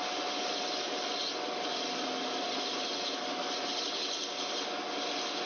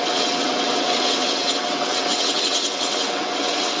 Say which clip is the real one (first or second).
first